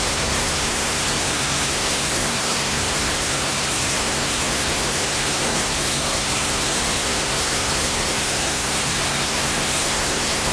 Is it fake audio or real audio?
fake